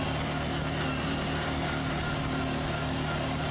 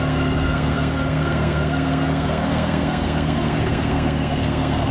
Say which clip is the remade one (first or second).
second